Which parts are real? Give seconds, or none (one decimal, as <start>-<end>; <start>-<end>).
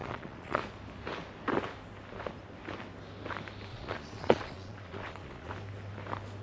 0.6-3.7; 5.5-6.4